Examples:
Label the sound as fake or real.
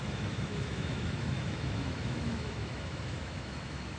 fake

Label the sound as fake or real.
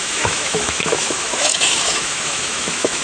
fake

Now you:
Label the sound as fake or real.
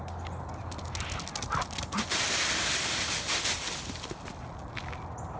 real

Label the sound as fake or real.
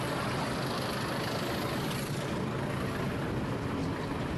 real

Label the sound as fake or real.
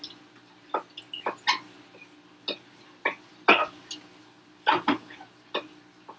real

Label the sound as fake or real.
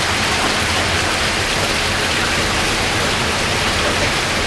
real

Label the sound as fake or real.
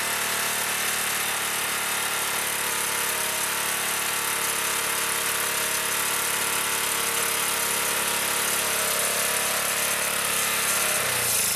real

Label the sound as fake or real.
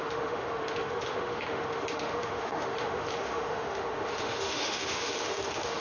fake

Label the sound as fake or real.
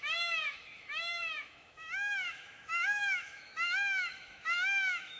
fake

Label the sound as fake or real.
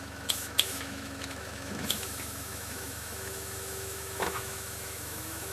fake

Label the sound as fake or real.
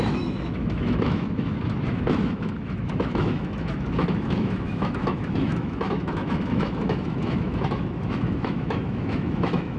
fake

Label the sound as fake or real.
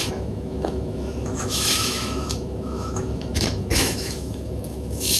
fake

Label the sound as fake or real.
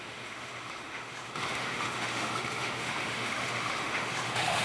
fake